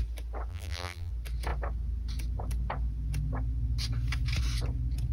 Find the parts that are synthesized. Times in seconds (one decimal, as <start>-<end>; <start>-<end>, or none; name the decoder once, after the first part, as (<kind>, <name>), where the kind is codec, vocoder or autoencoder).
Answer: 0.5-1.1 (vocoder, BigVGAN v2)

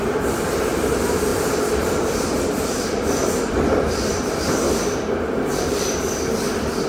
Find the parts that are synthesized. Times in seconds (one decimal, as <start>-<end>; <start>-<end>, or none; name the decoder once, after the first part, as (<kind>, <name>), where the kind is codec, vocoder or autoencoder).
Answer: 1.3-4.5 (vocoder, BigVGAN v2)

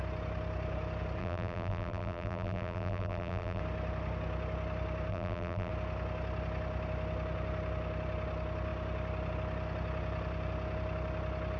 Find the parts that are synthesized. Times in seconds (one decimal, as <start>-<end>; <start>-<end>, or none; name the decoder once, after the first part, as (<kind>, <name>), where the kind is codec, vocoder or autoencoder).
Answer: 1.2-3.6 (vocoder, BigVGAN v2); 5.1-5.7

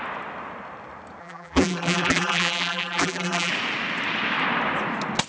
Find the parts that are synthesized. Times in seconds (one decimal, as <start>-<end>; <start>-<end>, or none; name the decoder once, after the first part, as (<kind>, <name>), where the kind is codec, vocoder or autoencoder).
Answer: 1.2-3.5 (vocoder, BigVGAN v2)

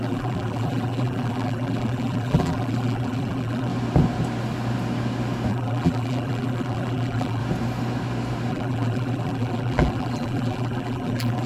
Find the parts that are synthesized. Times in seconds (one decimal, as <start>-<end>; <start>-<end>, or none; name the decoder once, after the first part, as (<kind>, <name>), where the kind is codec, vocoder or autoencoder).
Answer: 0.0-3.7 (vocoder, BigVGAN v2); 5.5-7.4; 8.5-11.5

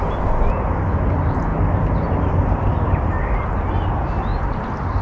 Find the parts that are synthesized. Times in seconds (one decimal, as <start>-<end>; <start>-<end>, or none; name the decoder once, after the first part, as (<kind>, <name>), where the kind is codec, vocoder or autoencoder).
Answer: 1.5-3.5 (vocoder, BigVGAN v2); 4.3-5.0